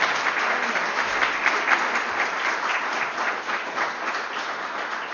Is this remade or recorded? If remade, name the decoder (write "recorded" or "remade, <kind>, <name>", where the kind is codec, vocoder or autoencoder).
recorded